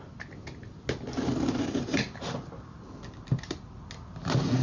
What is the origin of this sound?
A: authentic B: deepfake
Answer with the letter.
A